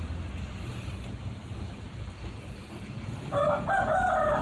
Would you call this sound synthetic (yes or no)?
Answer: no